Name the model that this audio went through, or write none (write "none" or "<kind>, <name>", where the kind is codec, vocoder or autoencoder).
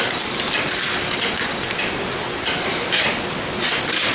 none